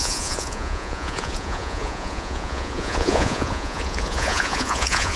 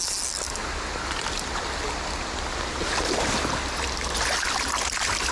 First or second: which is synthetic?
first